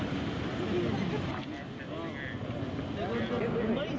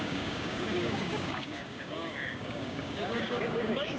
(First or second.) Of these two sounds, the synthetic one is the second